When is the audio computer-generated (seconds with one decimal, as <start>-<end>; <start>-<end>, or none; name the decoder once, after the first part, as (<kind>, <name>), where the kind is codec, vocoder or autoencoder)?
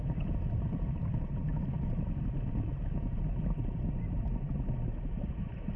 none